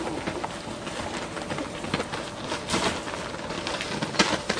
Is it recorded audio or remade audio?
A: recorded